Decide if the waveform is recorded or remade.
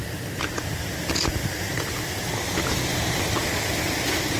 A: recorded